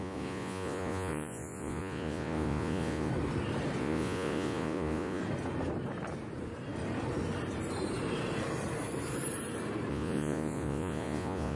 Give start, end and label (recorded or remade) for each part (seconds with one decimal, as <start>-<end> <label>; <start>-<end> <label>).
0.0-3.1 remade; 3.1-3.8 recorded; 3.8-5.2 remade; 5.2-9.9 recorded; 9.9-11.6 remade